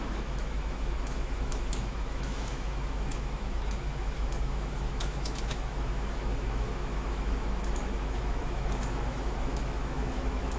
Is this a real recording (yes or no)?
no